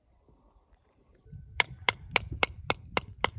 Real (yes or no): no